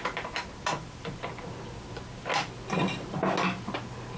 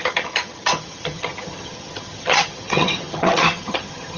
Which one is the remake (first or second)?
second